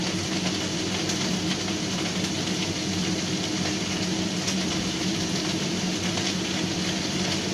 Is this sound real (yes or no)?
yes